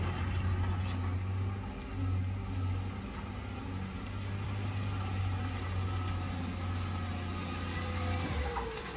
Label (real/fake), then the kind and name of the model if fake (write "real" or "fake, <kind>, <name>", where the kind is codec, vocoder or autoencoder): real